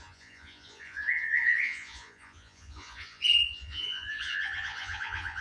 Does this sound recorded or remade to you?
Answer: remade